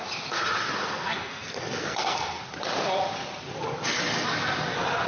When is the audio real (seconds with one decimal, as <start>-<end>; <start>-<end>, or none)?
0.0-0.8; 2.4-5.1